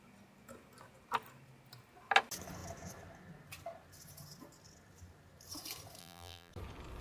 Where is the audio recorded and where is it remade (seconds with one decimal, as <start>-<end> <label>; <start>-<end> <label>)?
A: 0.0-6.0 recorded; 6.0-6.5 remade; 6.5-7.0 recorded